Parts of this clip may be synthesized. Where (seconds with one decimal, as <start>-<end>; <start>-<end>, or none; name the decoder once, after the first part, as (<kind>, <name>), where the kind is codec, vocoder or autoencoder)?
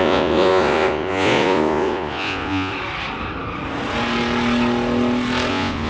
0.0-2.7 (vocoder, Vocos); 5.5-5.9